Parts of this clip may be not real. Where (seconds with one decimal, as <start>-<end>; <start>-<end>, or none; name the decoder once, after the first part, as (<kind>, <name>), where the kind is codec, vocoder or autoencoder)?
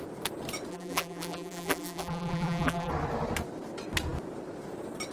0.7-2.9 (vocoder, BigVGAN v2)